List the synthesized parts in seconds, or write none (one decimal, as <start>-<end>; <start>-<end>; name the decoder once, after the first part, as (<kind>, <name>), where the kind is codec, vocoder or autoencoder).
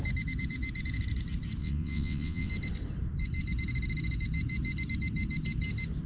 1.6-2.5 (vocoder, WaveNeXt)